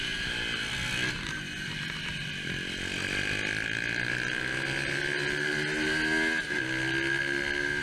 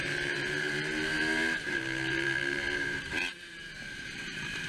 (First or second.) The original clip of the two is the first